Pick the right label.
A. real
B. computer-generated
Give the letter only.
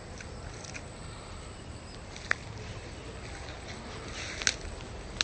A